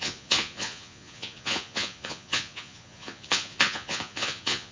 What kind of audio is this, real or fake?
fake